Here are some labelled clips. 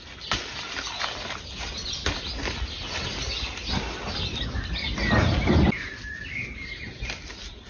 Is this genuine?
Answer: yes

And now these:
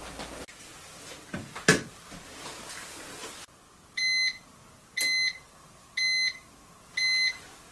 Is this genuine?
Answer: yes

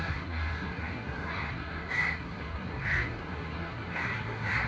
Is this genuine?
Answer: no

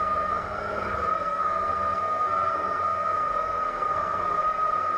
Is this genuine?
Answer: no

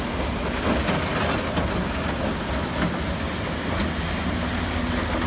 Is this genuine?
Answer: yes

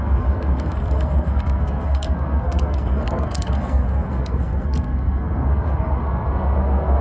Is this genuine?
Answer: no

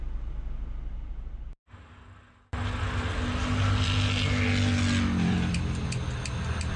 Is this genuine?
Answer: yes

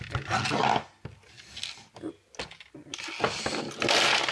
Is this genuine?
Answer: yes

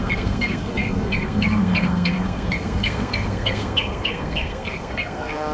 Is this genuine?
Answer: no